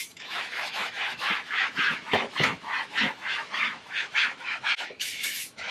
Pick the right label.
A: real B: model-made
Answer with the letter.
B